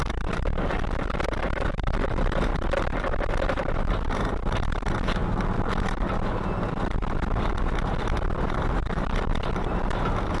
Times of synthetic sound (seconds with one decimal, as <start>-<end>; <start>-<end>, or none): none